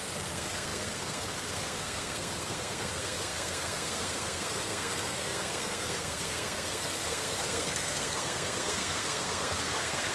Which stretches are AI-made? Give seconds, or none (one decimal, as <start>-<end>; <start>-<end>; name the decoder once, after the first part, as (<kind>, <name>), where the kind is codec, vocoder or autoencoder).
0.0-10.1 (codec, SNAC)